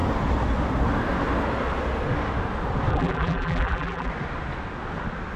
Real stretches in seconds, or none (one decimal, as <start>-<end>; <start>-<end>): 0.0-2.9; 4.1-5.4